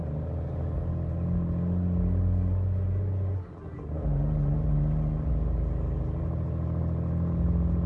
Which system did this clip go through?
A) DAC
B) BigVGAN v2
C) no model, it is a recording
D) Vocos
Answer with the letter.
C